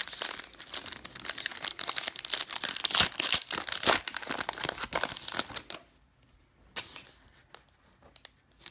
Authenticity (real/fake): real